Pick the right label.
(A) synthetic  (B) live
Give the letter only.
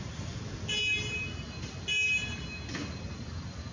B